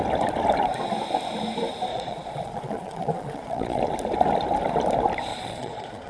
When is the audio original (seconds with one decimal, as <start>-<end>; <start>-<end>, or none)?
0.0-1.9; 3.8-5.3